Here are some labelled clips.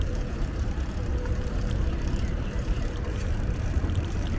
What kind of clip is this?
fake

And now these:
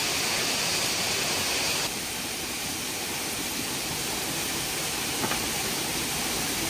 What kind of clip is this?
fake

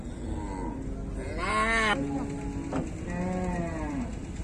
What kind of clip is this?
real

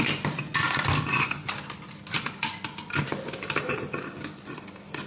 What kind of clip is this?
real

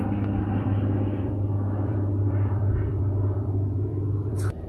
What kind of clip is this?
fake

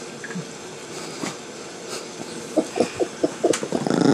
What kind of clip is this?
real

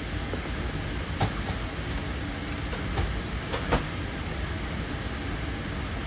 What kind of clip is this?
real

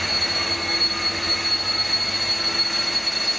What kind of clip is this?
real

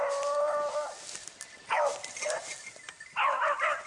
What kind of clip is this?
real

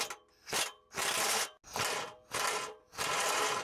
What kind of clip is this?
real